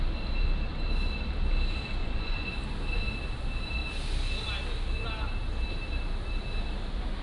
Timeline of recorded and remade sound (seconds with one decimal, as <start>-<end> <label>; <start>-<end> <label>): 0.0-2.0 recorded; 2.0-2.6 remade; 2.6-7.2 recorded